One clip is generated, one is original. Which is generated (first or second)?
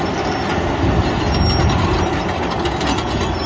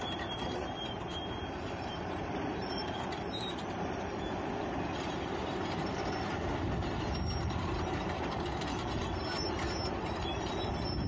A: second